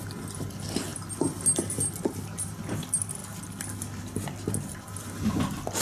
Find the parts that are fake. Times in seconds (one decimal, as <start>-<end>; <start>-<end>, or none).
none